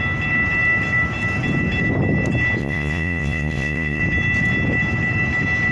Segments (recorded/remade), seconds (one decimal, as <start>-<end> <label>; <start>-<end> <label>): 0.0-2.6 recorded; 2.6-4.0 remade; 4.0-5.7 recorded